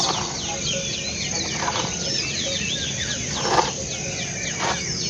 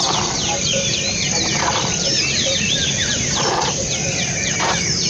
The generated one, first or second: second